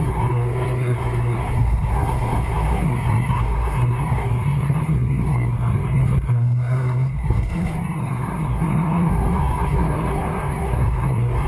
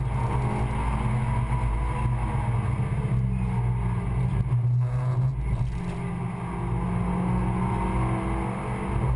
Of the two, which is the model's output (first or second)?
first